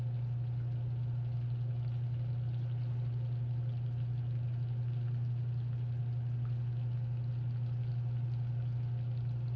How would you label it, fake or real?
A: real